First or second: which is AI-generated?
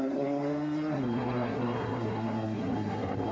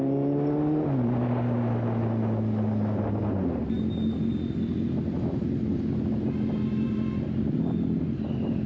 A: first